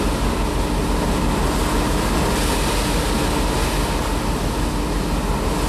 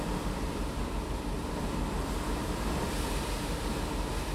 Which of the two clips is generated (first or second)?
second